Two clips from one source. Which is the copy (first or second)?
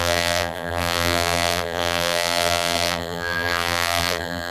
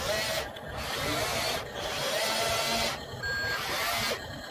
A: first